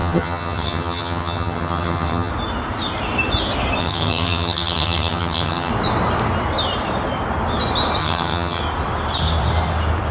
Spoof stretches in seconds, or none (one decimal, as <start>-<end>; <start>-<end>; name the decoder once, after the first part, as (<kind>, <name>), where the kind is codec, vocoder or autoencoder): 0.0-2.3 (vocoder, HiFi-GAN); 3.8-5.7; 8.0-8.6